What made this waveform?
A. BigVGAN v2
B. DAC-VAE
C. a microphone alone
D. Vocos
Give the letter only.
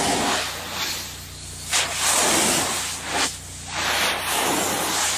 C